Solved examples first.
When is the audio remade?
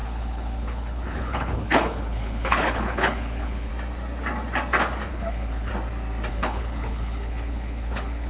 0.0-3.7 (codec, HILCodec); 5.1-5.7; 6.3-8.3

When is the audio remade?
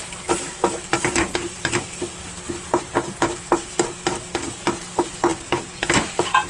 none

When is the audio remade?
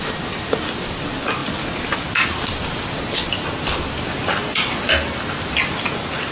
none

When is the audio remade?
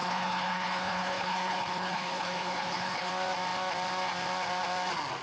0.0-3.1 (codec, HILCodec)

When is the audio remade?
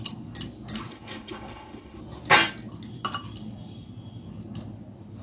0.9-2.0 (codec, HILCodec)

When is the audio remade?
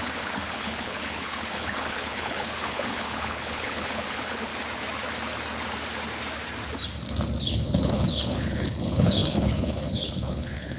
0.0-4.5 (codec, HILCodec); 7.4-10.8